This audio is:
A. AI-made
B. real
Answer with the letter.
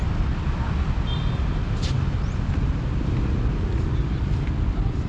B